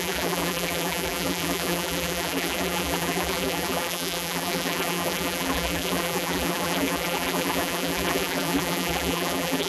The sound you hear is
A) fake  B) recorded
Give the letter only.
A